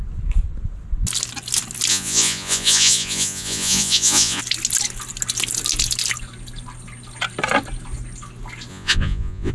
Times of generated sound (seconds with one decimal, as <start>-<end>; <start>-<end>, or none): 1.9-4.4; 8.7-9.5